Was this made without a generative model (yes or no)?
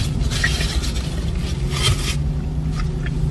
yes